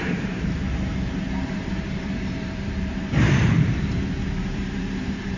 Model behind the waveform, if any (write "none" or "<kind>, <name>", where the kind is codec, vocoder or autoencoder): vocoder, BigVGAN v2